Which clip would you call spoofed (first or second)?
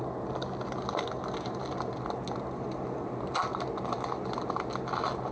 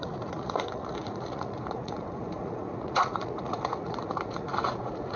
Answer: second